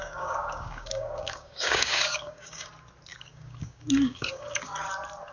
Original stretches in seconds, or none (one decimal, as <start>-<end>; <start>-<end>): 2.7-3.1; 4.7-5.3